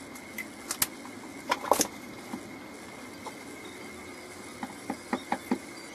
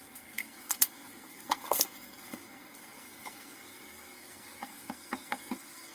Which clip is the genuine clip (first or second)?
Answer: first